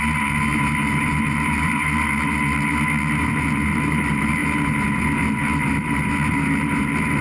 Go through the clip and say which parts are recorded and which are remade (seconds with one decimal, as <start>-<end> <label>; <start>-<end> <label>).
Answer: 0.0-7.2 remade